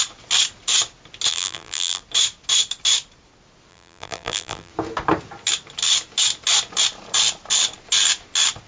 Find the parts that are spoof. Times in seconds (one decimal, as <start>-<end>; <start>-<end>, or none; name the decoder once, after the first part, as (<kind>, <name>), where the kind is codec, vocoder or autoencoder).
1.3-2.0 (vocoder, BigVGAN v2); 3.7-4.7